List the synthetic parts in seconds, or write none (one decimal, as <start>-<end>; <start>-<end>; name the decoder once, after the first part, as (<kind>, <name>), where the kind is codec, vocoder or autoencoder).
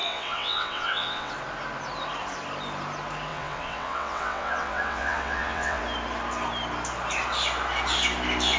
0.0-1.3 (vocoder, WaveNeXt); 3.3-5.8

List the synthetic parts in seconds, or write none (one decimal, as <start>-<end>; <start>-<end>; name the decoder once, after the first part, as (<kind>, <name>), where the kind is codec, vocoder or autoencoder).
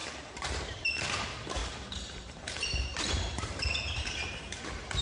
0.0-1.0 (vocoder, BigVGAN v2); 1.6-4.6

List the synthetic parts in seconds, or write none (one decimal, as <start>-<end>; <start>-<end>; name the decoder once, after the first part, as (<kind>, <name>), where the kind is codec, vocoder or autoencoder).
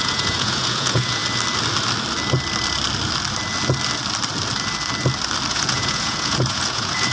0.0-1.2 (vocoder, Vocos); 5.5-7.1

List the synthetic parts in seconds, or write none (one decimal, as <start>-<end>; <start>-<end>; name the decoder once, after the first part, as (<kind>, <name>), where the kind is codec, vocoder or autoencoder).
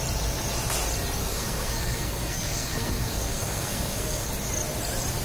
1.2-4.3 (codec, SNAC)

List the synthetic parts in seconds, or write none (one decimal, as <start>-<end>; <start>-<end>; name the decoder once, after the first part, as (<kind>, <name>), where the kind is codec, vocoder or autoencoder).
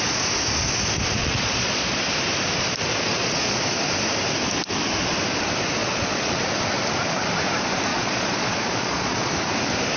1.2-2.0 (vocoder, Vocos); 3.1-3.6; 5.8-6.4; 7.9-9.3